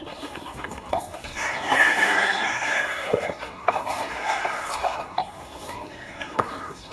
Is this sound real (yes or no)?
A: no